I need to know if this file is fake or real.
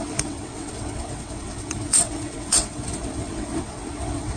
fake